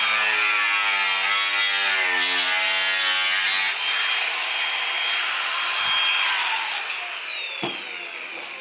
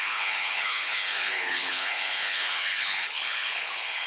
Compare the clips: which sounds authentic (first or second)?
first